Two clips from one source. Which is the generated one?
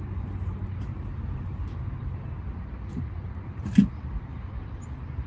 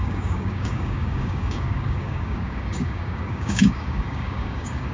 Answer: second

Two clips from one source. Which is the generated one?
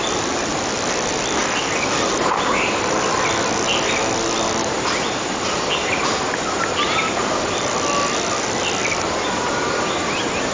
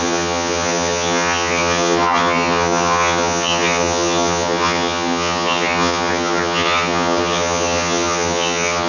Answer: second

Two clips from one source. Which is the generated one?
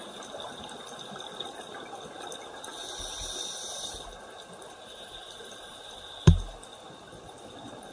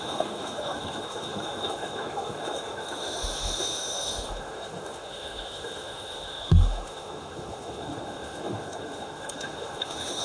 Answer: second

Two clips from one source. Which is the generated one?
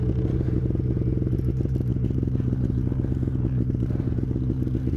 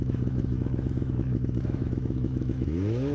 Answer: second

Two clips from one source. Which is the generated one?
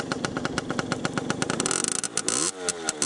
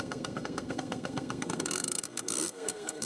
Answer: second